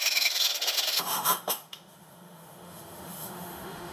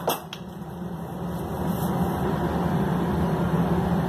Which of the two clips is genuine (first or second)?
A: second